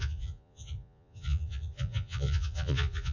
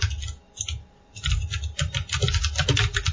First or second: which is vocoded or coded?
first